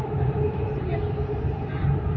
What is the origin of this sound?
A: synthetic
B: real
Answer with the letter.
B